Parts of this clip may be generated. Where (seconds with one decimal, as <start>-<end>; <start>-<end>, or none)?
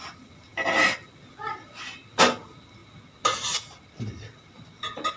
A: none